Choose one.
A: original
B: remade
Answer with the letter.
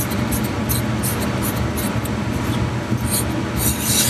A